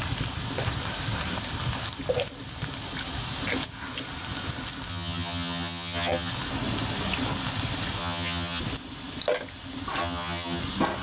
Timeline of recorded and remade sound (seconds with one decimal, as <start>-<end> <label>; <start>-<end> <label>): 0.0-4.9 recorded; 4.9-6.3 remade; 6.3-8.0 recorded; 8.0-8.6 remade; 8.6-10.0 recorded; 10.0-10.6 remade; 10.6-11.0 recorded